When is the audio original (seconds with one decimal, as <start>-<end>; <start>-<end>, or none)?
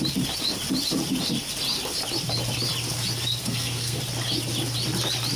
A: 0.0-3.4; 4.0-5.4